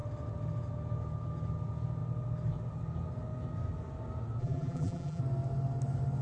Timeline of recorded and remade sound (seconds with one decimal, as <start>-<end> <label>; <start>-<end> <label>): 0.0-4.4 recorded; 4.4-5.2 remade; 5.2-6.2 recorded